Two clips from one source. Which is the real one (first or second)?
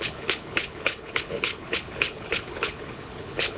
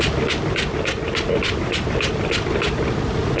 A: second